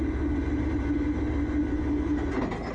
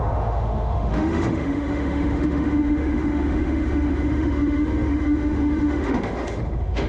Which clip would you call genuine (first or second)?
first